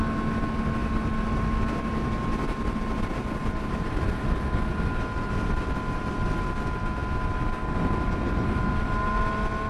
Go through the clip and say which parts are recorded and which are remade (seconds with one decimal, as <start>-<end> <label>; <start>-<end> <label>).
0.0-9.7 recorded